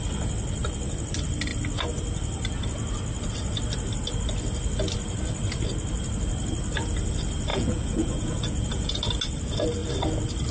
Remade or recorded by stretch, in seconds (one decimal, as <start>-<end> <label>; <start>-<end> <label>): 0.0-7.5 recorded; 7.5-9.0 remade; 9.0-10.5 recorded